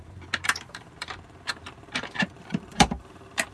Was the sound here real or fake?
fake